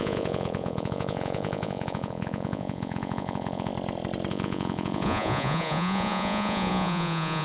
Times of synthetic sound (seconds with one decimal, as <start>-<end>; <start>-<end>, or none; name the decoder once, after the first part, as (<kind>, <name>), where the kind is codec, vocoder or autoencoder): 0.0-3.7 (vocoder, Vocos); 4.3-7.4